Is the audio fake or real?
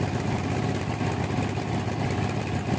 real